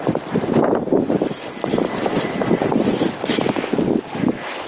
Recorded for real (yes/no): yes